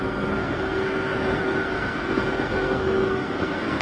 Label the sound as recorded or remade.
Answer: remade